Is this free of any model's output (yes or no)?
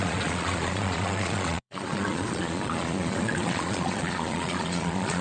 no